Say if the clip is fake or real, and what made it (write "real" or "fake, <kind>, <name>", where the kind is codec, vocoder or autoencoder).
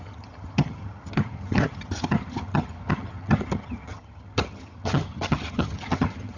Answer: fake, vocoder, HiFi-GAN